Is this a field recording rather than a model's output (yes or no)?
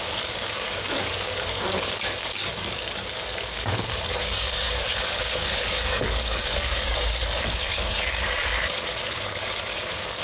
no